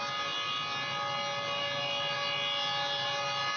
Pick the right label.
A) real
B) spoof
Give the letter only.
A